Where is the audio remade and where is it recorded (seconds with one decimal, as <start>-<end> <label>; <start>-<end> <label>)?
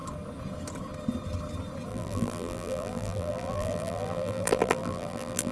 0.0-1.9 recorded; 1.9-5.5 remade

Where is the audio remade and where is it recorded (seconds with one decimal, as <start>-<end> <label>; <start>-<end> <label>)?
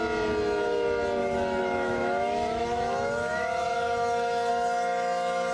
0.0-1.2 recorded; 1.2-4.5 remade; 4.5-5.5 recorded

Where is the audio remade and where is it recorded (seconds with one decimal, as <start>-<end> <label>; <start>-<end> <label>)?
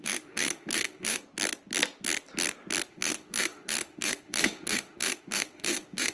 0.0-1.2 remade; 1.2-2.9 recorded; 2.9-6.1 remade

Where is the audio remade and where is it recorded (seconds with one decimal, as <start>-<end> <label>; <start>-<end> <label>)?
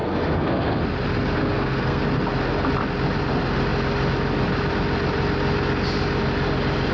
0.0-0.8 remade; 0.8-1.4 recorded; 1.4-2.0 remade; 2.0-6.9 recorded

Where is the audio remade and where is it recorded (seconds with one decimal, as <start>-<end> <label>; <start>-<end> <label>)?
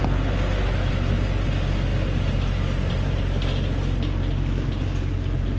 0.0-5.6 recorded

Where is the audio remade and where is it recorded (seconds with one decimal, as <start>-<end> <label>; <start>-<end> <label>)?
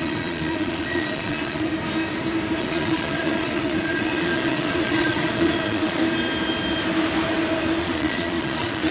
0.0-1.7 remade; 1.7-2.6 recorded; 2.6-6.0 remade; 6.0-7.8 recorded; 7.8-8.9 remade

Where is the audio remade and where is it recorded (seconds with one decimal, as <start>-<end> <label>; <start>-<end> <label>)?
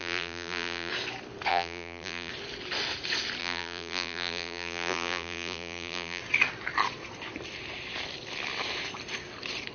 0.0-0.9 remade; 0.9-1.5 recorded; 1.5-2.3 remade; 2.3-3.4 recorded; 3.4-6.2 remade; 6.2-9.7 recorded